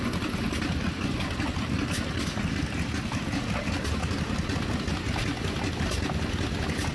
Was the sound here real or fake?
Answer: real